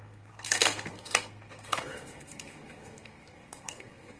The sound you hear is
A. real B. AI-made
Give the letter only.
B